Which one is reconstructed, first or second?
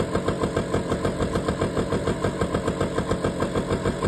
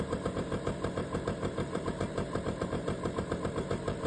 second